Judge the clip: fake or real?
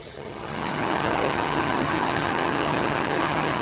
fake